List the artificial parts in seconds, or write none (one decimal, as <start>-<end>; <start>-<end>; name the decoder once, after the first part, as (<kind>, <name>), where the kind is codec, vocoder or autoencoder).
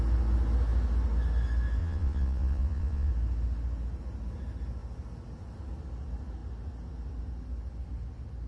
1.8-3.1 (vocoder, Vocos)